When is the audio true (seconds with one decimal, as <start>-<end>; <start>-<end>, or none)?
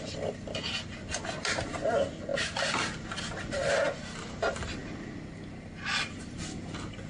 0.0-7.1